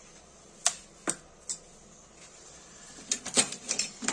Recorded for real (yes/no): yes